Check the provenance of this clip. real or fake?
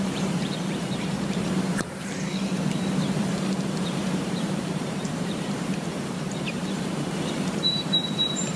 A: fake